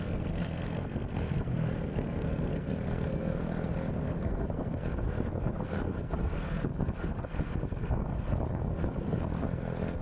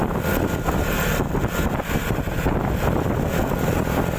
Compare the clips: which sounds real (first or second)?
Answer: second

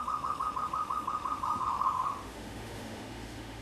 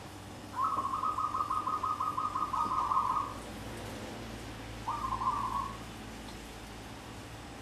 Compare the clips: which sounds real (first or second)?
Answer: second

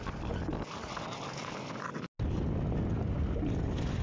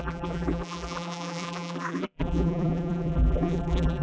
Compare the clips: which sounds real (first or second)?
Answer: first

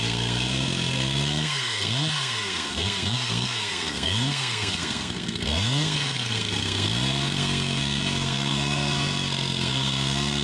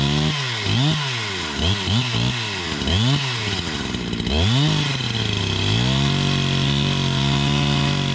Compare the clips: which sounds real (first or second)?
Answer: second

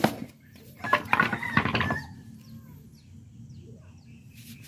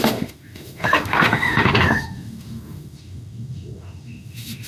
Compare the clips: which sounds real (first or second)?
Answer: first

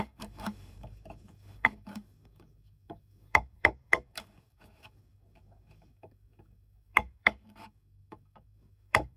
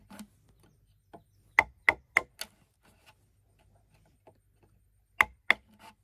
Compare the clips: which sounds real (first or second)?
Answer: second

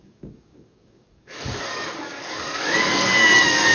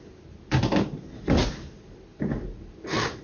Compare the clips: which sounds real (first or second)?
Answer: second